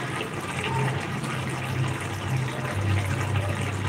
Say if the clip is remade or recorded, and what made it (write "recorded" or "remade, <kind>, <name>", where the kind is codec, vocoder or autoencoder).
recorded